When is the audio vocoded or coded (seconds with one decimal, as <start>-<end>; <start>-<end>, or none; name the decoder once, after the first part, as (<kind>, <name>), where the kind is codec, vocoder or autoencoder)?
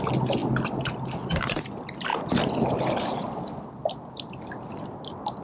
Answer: none